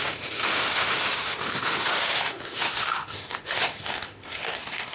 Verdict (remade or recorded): remade